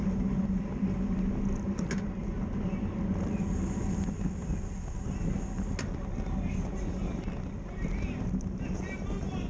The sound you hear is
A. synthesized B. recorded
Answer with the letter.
B